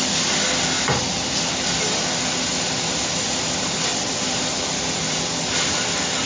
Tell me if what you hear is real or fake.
real